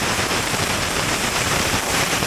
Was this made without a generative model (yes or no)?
no